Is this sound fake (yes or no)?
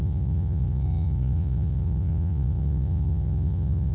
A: yes